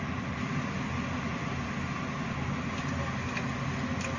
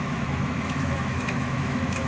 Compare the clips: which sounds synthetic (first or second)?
second